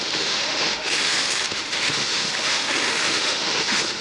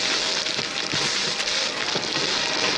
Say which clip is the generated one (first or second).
first